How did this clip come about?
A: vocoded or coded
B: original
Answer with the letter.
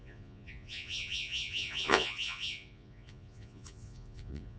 A